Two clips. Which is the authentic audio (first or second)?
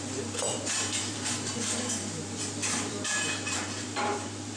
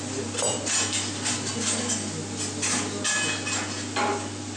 second